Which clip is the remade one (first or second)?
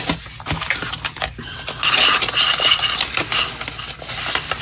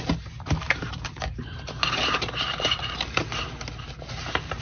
second